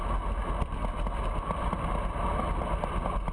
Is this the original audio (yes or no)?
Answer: yes